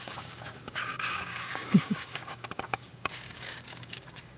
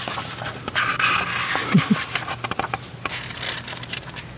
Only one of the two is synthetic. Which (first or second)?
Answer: first